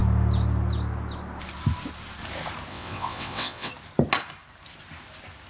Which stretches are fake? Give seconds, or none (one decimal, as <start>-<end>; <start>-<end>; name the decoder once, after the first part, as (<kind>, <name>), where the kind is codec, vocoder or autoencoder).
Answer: 2.7-3.7 (vocoder, WaveNeXt)

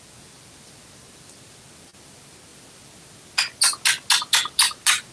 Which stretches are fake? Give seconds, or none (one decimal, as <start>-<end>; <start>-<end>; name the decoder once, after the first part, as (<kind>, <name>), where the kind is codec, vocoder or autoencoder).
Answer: none

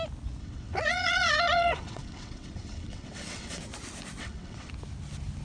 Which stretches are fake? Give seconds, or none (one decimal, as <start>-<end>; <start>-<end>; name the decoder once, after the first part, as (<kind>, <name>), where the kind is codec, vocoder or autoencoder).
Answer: 0.4-3.6 (vocoder, WaveNeXt); 4.2-4.7